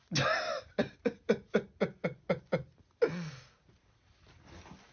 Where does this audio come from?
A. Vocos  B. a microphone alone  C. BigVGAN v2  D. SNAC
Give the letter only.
B